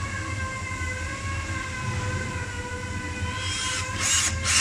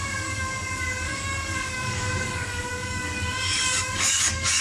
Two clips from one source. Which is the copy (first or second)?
second